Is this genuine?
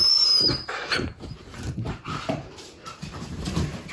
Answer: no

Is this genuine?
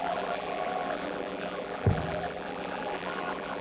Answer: no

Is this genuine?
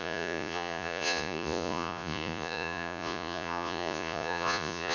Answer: no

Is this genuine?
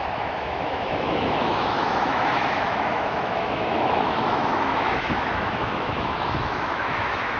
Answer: no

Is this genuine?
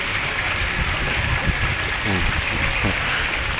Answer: yes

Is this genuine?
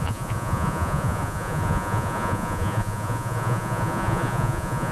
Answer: no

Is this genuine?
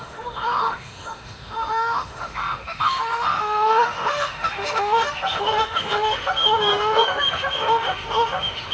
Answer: no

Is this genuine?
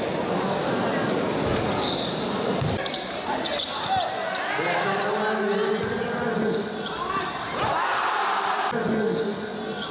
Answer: yes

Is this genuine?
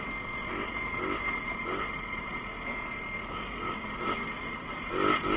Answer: yes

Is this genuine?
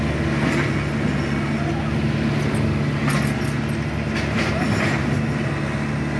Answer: yes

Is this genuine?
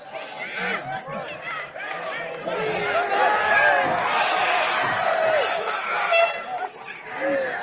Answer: yes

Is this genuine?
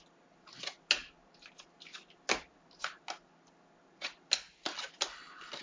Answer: yes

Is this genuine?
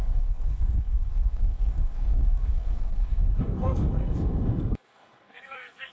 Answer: no